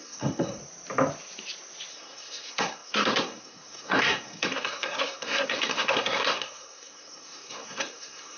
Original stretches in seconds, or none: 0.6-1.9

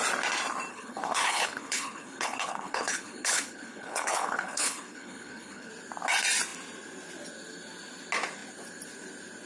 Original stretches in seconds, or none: 0.0-0.7; 5.7-9.5

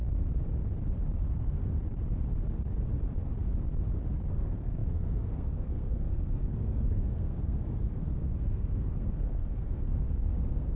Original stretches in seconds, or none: 0.0-1.2; 1.6-4.3

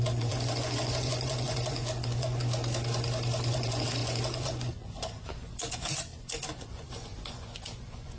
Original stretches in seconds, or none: 2.4-3.5

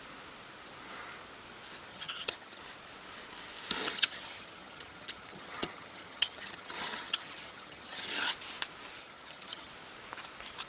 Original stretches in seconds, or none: 0.0-1.9; 2.6-3.8; 8.3-9.0; 9.7-10.7

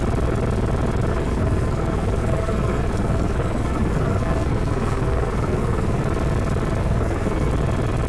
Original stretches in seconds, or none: 0.0-1.1; 6.0-6.8; 7.5-8.1

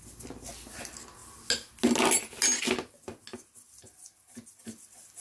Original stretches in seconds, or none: 0.0-5.2

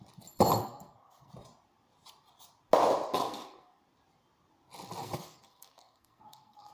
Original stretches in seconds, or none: 0.0-0.6; 1.3-3.1; 3.8-5.0